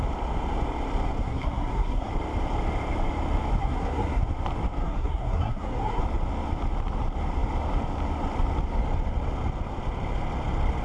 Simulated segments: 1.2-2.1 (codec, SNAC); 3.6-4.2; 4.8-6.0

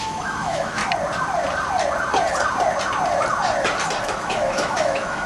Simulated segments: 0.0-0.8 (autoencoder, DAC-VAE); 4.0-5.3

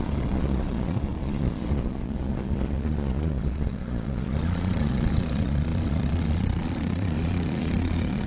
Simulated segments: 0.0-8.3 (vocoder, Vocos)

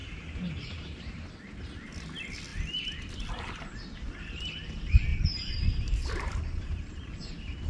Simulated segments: 0.0-1.3 (vocoder, BigVGAN v2); 5.1-7.7

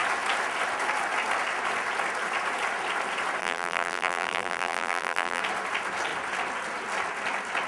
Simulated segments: 3.4-5.4 (vocoder, BigVGAN v2)

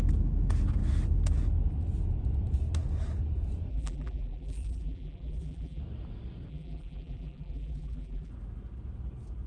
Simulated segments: 3.7-5.8 (vocoder, BigVGAN v2); 6.5-8.3

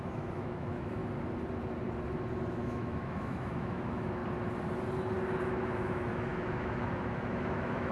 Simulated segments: 0.0-1.0 (autoencoder, DAC-VAE); 2.5-4.2; 5.4-7.9

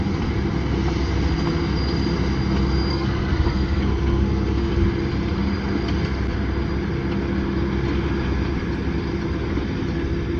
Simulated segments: 2.9-4.7 (codec, SNAC)